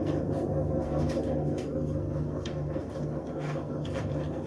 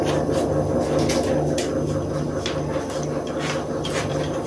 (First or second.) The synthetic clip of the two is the first